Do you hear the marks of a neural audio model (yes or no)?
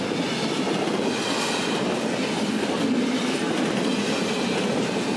no